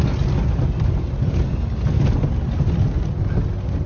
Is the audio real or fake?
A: real